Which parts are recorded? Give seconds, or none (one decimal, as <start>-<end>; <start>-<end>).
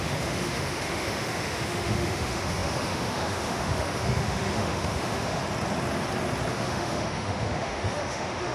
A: 5.4-6.5